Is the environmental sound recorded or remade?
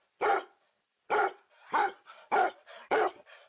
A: recorded